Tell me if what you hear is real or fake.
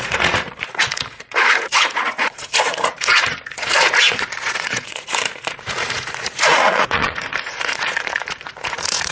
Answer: fake